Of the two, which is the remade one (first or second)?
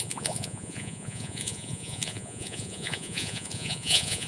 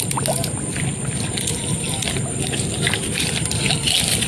first